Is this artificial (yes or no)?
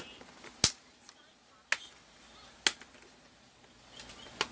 no